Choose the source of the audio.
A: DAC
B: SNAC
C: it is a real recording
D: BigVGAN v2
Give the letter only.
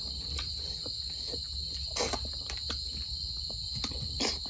C